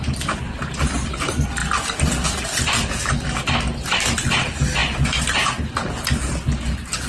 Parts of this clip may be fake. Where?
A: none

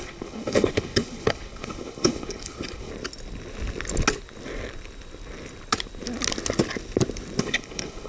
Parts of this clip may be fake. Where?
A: 0.0-2.9 (codec, HILCodec); 7.4-8.1

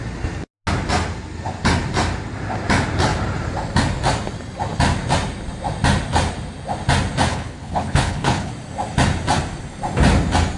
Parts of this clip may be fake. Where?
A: 7.3-8.5 (codec, HILCodec)

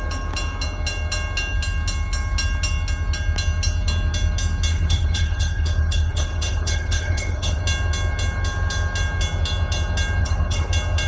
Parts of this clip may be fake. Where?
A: 4.7-7.6 (codec, HILCodec); 10.2-10.7